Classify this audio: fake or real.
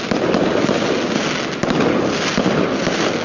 real